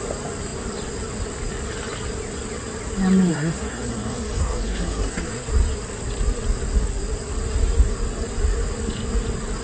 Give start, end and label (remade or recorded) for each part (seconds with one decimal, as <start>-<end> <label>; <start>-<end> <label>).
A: 0.0-3.3 recorded; 3.3-5.5 remade; 5.5-9.6 recorded